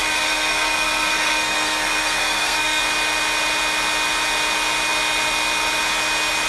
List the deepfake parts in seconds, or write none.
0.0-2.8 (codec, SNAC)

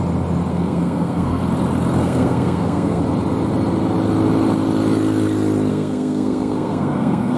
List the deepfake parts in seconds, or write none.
0.5-1.4 (codec, SNAC); 2.0-3.0; 5.7-7.4

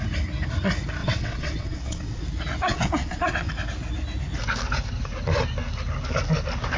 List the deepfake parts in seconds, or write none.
1.0-2.2 (vocoder, WaveNeXt); 2.7-3.5

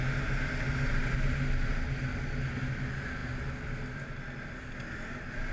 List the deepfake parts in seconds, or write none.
none

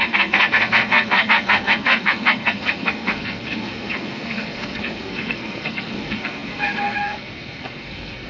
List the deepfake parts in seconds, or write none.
0.0-8.3 (codec, SNAC)

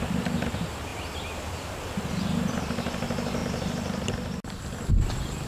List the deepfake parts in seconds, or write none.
none